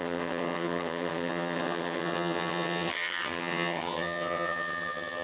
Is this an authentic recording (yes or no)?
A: no